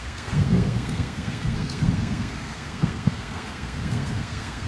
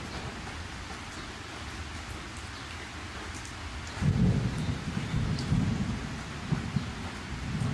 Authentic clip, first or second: second